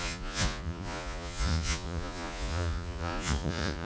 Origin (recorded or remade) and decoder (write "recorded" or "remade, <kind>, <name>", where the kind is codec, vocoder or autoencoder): remade, vocoder, Vocos